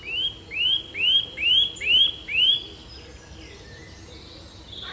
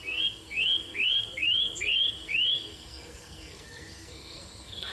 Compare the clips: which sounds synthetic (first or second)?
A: second